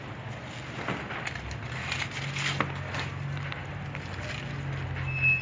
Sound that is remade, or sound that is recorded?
recorded